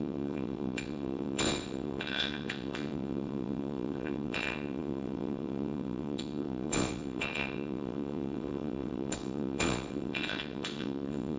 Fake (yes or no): yes